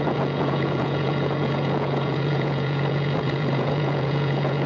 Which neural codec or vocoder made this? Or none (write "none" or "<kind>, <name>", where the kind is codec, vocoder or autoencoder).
vocoder, Vocos